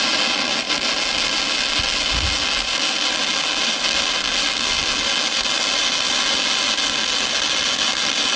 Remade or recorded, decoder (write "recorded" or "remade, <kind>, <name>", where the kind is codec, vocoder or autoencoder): recorded